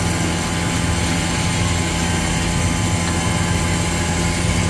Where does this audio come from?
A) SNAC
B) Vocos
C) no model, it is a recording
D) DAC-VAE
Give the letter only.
C